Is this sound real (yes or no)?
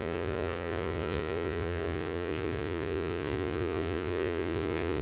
no